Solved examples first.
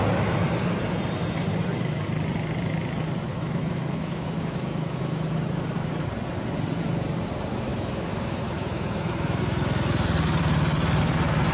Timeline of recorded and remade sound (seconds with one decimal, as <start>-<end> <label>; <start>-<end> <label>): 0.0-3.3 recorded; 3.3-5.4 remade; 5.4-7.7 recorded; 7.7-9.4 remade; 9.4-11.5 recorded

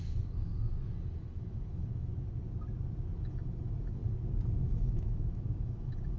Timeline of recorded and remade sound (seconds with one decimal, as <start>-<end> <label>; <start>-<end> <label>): 0.0-0.5 remade; 0.5-1.2 recorded; 1.2-2.1 remade; 2.1-3.2 recorded; 3.2-4.0 remade; 4.0-4.6 recorded; 4.6-6.2 remade

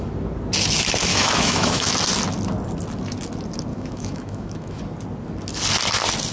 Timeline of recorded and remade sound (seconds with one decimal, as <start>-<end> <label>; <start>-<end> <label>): 0.0-1.1 recorded; 1.1-1.9 remade; 1.9-3.7 recorded; 3.7-4.8 remade; 4.8-6.3 recorded

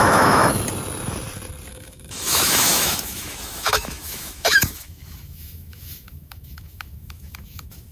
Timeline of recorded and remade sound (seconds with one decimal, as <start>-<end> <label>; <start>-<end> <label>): 0.0-0.4 remade; 0.4-1.7 recorded; 1.7-7.9 remade

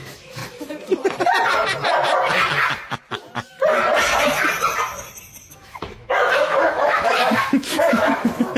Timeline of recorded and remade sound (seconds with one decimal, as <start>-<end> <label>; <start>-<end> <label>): 0.0-0.4 remade; 0.4-5.5 recorded; 5.5-8.6 remade

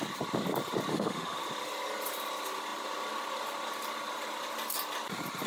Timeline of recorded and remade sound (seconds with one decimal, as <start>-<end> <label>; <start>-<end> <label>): 0.0-0.9 recorded; 0.9-1.4 remade; 1.4-5.5 recorded